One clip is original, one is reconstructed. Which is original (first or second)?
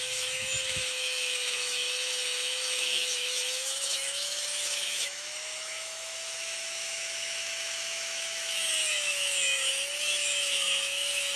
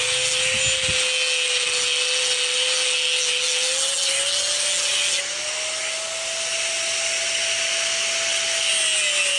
second